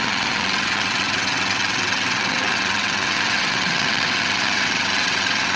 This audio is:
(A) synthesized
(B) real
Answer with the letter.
A